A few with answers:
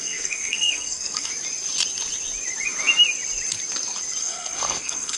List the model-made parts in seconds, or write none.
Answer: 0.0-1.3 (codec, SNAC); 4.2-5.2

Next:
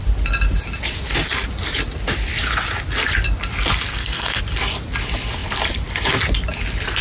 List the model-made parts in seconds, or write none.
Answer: 3.9-4.4 (codec, SNAC)